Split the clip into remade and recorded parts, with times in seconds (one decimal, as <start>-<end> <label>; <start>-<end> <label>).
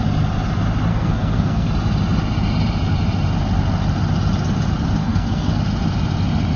0.0-0.9 recorded; 0.9-1.7 remade; 1.7-5.0 recorded; 5.0-5.6 remade; 5.6-6.6 recorded